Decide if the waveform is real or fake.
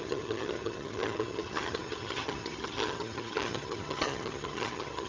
fake